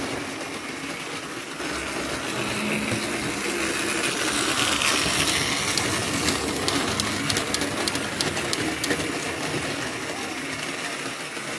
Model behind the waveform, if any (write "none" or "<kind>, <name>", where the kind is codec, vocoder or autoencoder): none